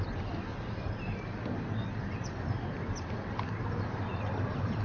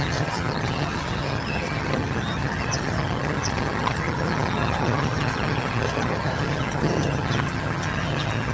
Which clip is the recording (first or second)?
first